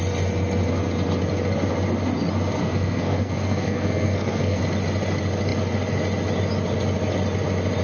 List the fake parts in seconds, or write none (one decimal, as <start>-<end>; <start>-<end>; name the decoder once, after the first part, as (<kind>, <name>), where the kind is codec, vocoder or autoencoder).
2.6-4.6 (codec, SNAC)